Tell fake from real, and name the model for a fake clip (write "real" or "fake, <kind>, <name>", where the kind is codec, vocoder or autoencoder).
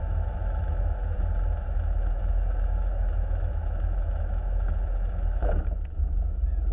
fake, autoencoder, DAC-VAE